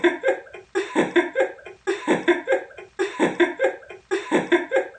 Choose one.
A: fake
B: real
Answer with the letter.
B